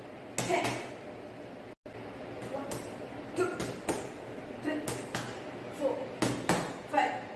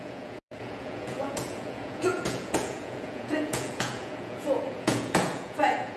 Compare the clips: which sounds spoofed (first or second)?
second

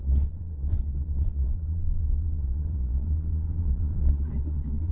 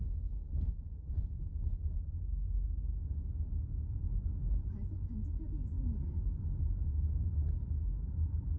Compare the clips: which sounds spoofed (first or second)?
first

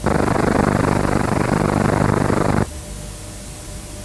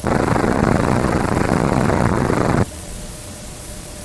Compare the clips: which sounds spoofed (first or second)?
second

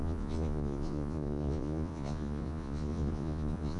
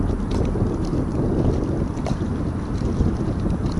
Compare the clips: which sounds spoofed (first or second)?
first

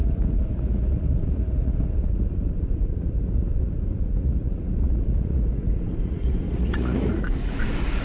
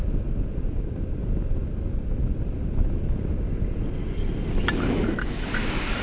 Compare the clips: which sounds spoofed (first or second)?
first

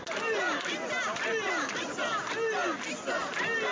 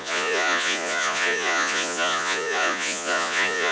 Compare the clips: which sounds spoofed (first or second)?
second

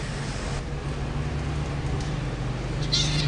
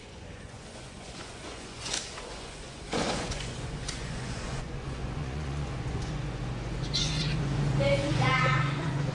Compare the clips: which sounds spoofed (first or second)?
second